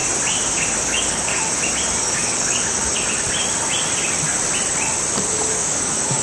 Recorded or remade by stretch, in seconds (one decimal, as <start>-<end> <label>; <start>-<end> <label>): 0.0-0.8 recorded; 0.8-1.3 remade; 1.3-2.0 recorded; 2.0-2.8 remade; 2.8-5.3 recorded; 5.3-6.2 remade